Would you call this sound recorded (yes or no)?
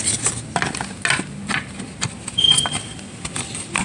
yes